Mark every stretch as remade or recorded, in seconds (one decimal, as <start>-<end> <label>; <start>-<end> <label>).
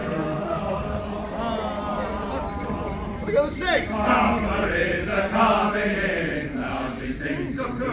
0.0-1.0 remade; 1.0-7.9 recorded